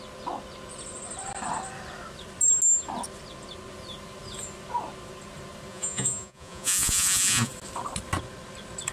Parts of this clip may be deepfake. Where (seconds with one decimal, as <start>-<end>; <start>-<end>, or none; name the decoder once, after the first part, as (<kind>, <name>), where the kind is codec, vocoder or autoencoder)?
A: 5.7-7.5 (vocoder, Vocos)